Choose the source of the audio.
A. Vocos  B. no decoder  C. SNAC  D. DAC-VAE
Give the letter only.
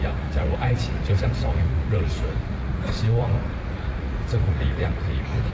A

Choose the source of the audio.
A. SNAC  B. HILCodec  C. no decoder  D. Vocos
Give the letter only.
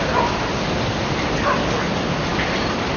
C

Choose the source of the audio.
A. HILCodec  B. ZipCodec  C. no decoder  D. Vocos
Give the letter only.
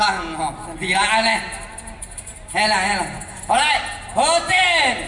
C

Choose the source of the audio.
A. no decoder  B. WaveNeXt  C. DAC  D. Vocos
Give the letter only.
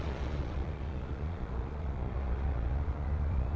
D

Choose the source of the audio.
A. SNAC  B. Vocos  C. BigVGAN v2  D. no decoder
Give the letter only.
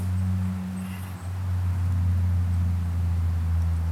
D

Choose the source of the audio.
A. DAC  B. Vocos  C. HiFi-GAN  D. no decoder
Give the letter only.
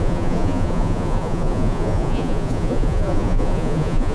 B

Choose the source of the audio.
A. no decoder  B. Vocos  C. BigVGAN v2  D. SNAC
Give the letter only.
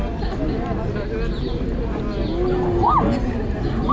A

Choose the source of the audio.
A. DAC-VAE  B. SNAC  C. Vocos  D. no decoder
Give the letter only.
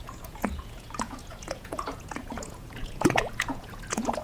C